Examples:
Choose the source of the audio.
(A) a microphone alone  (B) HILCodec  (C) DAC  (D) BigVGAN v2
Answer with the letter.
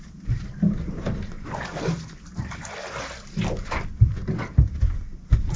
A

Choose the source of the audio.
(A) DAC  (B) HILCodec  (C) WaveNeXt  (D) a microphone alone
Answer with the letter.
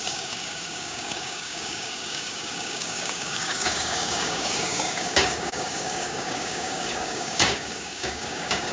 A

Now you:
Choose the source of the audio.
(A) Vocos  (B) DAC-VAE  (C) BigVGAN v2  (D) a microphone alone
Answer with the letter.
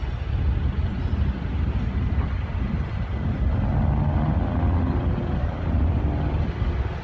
D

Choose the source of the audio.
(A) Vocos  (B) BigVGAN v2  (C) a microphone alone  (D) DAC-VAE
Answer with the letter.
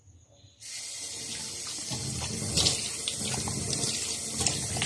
C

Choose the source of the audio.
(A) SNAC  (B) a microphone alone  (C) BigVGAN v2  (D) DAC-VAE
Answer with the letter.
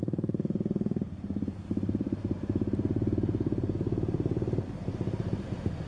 C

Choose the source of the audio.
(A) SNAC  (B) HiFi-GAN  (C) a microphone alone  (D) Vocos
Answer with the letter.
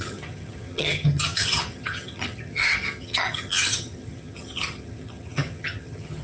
B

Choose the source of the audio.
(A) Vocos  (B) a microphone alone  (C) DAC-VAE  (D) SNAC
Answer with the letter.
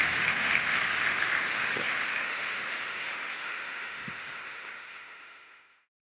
C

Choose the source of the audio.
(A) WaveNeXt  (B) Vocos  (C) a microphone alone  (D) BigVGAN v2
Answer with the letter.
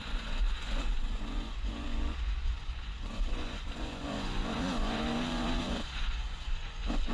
B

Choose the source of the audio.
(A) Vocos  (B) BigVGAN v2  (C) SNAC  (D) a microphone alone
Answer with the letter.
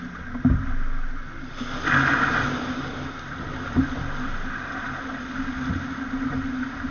D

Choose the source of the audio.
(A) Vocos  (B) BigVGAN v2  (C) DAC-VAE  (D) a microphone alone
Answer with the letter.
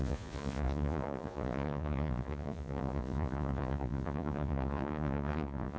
A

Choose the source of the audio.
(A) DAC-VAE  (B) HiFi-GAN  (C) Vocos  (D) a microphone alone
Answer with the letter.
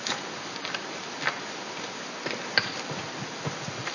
D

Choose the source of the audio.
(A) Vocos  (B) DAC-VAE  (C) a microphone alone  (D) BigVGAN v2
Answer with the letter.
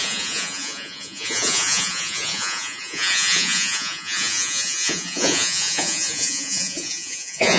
A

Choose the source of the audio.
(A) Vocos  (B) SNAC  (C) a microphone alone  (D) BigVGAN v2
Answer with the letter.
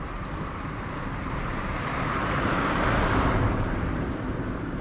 D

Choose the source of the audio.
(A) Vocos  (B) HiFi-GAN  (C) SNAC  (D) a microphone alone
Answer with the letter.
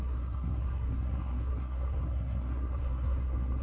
C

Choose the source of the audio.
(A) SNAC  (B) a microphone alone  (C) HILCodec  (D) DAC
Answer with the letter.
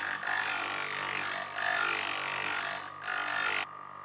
B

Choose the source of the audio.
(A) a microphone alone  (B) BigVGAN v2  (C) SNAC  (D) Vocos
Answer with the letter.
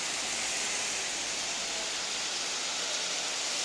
A